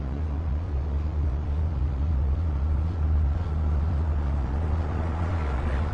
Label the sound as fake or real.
fake